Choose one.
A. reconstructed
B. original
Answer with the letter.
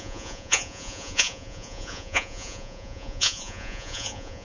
A